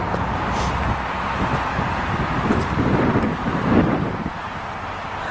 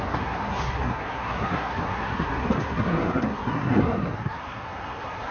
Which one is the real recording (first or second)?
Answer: first